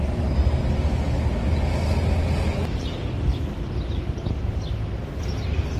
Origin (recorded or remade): recorded